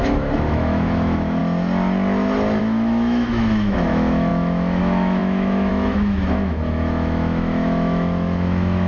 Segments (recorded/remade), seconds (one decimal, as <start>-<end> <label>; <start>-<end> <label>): 0.0-1.4 remade; 1.4-2.6 recorded; 2.6-8.9 remade